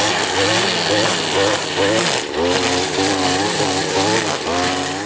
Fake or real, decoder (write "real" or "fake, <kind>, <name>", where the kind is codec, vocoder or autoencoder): real